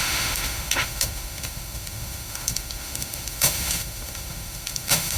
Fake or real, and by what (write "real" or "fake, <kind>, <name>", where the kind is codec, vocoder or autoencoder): fake, autoencoder, DAC-VAE